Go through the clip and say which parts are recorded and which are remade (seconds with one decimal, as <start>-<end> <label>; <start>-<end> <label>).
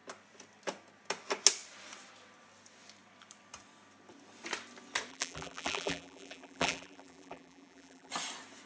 0.0-5.1 recorded; 5.1-8.1 remade; 8.1-8.7 recorded